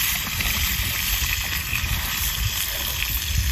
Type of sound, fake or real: real